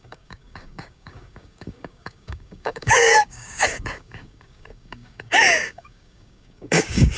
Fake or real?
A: fake